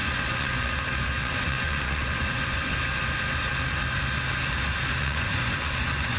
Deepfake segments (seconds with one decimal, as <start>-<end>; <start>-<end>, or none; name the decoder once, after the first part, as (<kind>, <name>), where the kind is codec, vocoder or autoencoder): 0.0-0.7 (vocoder, Vocos); 1.2-2.7; 5.0-6.2

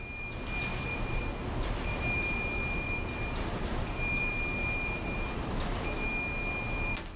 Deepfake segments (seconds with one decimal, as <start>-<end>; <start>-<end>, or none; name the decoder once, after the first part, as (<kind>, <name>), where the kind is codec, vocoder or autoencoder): 0.7-1.2 (vocoder, BigVGAN v2); 1.9-5.8

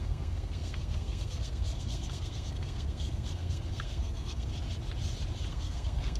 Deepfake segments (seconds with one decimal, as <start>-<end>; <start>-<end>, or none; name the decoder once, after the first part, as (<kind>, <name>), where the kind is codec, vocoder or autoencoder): 0.0-4.5 (codec, SNAC); 5.5-6.2

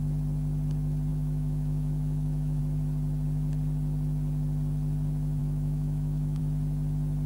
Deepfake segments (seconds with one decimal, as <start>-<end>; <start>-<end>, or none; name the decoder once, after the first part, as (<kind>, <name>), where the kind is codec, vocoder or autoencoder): 1.1-2.6 (autoencoder, DAC-VAE); 5.4-6.4

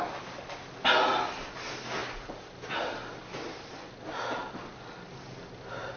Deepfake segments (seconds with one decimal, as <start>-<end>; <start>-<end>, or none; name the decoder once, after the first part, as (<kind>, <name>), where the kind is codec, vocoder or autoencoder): none

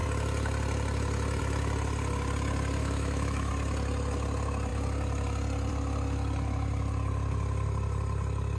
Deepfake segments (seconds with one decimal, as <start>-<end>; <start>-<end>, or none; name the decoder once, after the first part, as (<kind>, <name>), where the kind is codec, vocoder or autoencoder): 2.8-3.5 (autoencoder, DAC-VAE)